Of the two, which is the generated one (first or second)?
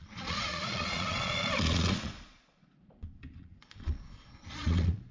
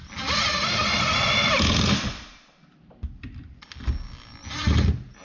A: first